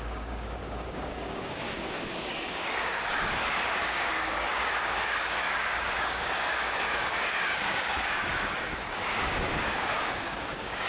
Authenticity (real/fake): fake